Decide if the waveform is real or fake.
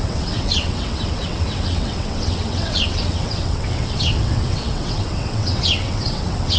fake